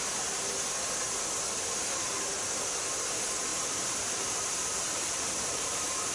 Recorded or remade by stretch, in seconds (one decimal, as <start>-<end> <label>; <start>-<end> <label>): 0.0-3.5 recorded; 3.5-6.1 remade